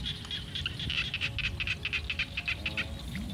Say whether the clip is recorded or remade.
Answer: recorded